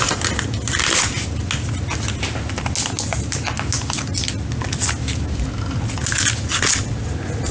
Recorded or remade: recorded